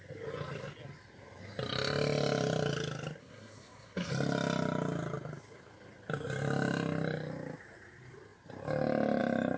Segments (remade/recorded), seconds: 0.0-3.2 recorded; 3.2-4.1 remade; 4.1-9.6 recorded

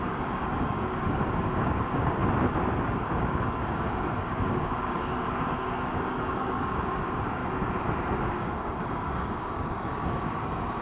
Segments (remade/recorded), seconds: 0.0-2.2 remade; 2.2-2.8 recorded; 2.8-7.4 remade; 7.4-8.3 recorded; 8.3-10.8 remade

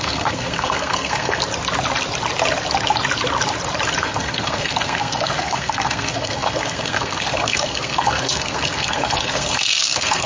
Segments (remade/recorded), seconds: 0.0-1.4 remade; 1.4-4.0 recorded; 4.0-10.3 remade

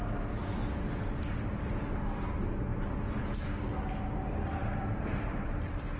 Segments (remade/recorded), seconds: 0.0-0.4 recorded; 0.4-1.5 remade; 1.5-2.7 recorded; 2.7-3.2 remade; 3.2-4.6 recorded; 4.6-6.0 remade

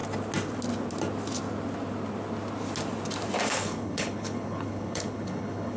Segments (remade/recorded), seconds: 0.0-3.5 recorded; 3.5-5.8 remade

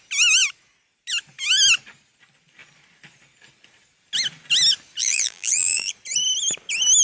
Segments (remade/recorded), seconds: 0.0-5.0 recorded; 5.0-5.9 remade; 5.9-7.0 recorded

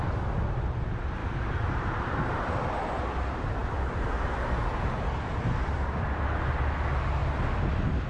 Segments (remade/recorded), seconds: 0.0-1.2 recorded; 1.2-3.0 remade; 3.0-8.1 recorded